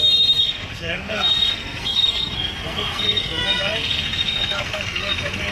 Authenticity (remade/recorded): remade